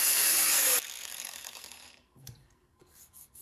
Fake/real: fake